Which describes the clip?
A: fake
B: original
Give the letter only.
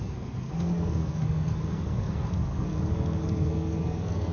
A